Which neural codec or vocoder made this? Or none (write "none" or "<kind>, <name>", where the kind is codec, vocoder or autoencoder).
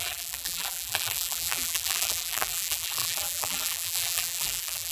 vocoder, BigVGAN v2